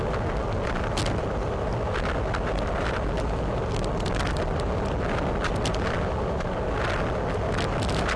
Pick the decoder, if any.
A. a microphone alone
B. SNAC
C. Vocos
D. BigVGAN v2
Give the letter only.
A